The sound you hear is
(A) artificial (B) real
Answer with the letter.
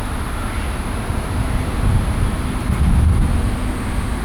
B